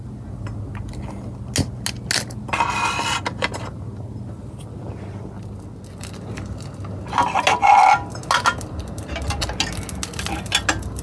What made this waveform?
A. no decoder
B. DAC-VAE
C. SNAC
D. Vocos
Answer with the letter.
A